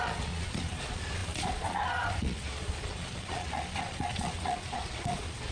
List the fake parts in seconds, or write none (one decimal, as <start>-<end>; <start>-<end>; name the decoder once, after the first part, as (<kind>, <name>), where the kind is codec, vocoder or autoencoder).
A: 0.0-5.5 (vocoder, Vocos)

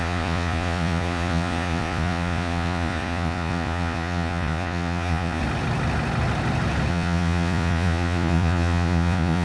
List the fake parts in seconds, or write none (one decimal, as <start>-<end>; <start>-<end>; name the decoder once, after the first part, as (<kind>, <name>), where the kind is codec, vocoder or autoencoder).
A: 0.0-5.4 (vocoder, Vocos); 6.9-9.4

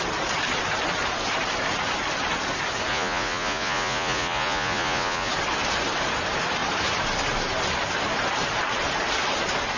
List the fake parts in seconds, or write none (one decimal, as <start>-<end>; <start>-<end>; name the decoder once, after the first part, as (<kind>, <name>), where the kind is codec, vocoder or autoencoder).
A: 2.9-5.3 (vocoder, Vocos)

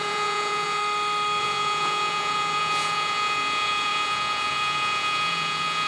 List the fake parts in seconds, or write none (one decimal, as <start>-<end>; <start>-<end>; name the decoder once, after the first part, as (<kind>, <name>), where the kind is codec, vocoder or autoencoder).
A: 0.0-0.8 (vocoder, Vocos); 1.4-5.9

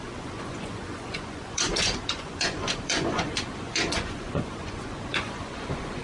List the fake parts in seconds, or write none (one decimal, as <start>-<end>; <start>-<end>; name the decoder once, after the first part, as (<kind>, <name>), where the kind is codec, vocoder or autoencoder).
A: 0.0-6.0 (vocoder, Vocos)

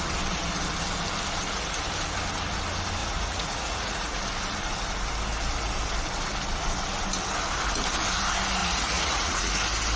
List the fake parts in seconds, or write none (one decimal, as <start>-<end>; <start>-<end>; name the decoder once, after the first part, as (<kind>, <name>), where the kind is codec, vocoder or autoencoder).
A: 3.0-4.2 (vocoder, Vocos); 8.6-9.5

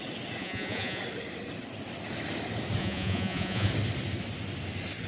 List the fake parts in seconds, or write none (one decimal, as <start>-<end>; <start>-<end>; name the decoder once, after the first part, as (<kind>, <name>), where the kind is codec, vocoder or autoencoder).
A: 0.4-1.0 (vocoder, Vocos); 2.8-3.7

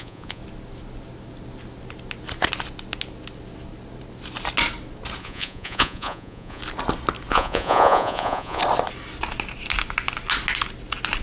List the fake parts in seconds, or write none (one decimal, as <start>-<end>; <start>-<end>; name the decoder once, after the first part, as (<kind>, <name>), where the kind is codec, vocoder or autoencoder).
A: 0.0-0.4 (vocoder, Vocos); 5.2-6.6; 7.3-8.6